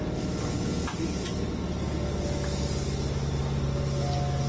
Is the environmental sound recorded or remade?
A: recorded